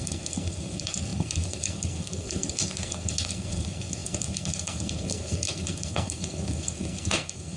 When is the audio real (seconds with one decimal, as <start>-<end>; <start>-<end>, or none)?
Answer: none